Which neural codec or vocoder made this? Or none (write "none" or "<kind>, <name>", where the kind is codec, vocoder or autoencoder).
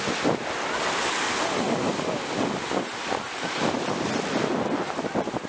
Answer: none